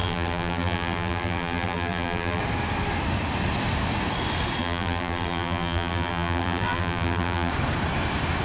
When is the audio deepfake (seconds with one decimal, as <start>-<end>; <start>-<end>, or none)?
0.0-2.4; 4.6-7.5